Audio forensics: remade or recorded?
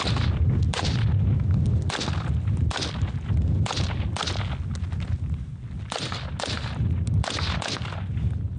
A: recorded